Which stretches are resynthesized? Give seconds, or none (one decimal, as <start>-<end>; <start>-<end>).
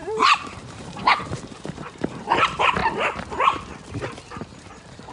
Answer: 0.0-2.8; 4.3-5.1